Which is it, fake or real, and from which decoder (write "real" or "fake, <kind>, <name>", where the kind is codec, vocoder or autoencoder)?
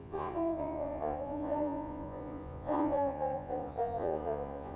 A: fake, vocoder, Vocos